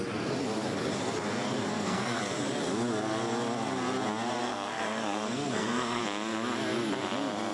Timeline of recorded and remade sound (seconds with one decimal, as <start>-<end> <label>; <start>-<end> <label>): 0.0-1.7 recorded; 1.7-2.2 remade; 2.2-4.4 recorded; 4.4-6.0 remade; 6.0-7.5 recorded